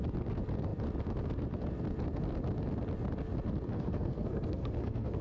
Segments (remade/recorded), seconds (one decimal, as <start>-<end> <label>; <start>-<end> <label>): 0.0-3.7 recorded; 3.7-5.2 remade